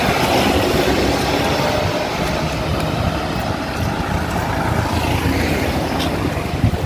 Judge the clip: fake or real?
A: real